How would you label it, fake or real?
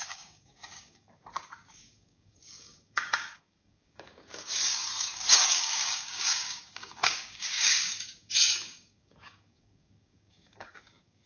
fake